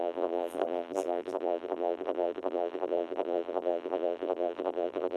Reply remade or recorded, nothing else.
remade